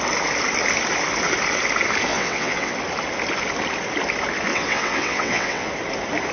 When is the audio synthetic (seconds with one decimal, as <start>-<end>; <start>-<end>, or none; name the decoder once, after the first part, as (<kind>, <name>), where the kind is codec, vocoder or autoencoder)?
2.1-2.7 (vocoder, WaveNeXt); 4.5-5.7